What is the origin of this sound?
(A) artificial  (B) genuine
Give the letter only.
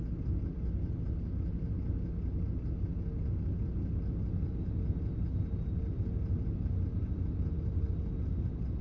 B